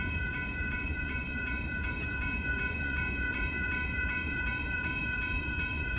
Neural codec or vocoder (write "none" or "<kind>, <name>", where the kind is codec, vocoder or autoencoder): vocoder, Vocos